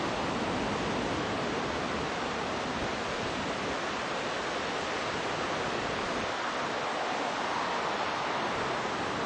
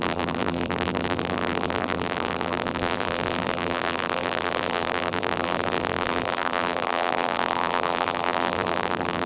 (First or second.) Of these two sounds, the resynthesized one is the second